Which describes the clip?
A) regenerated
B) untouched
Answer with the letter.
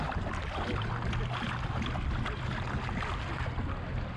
B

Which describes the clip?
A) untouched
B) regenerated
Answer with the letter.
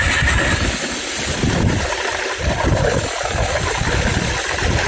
A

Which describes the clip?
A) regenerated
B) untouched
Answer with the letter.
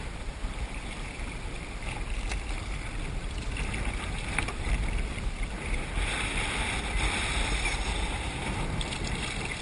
B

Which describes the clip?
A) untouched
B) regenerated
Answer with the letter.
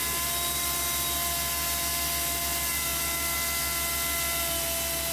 A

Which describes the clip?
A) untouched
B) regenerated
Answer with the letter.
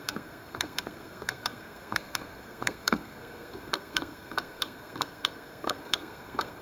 B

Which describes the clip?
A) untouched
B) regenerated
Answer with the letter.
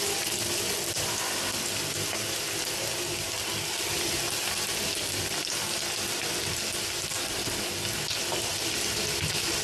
A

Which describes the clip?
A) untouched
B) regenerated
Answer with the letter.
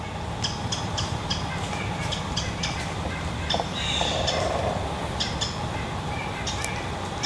A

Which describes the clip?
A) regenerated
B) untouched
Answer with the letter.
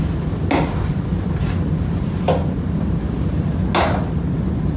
B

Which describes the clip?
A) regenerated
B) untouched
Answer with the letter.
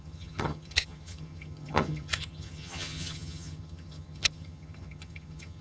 A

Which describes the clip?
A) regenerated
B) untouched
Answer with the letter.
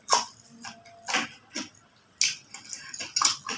B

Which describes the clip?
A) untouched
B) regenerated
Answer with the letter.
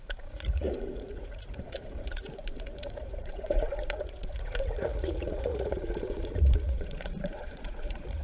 B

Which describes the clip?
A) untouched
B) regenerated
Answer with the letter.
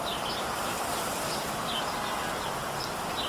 A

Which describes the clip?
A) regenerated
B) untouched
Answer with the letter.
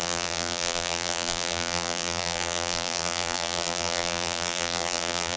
A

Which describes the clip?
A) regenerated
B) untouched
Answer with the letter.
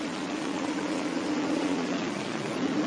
A